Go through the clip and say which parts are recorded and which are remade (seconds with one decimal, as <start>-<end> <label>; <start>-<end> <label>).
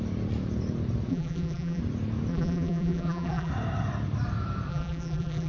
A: 0.0-1.1 recorded; 1.1-1.8 remade; 1.8-2.3 recorded; 2.3-3.5 remade; 3.5-4.7 recorded; 4.7-5.5 remade